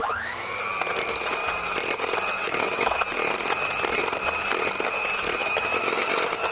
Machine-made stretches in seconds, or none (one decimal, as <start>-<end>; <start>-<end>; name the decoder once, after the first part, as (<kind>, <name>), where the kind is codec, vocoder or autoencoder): 0.0-0.6 (autoencoder, DAC-VAE); 2.4-3.0; 5.4-6.1